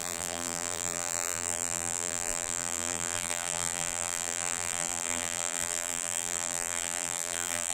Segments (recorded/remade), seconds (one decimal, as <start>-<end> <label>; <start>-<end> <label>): 0.0-7.7 remade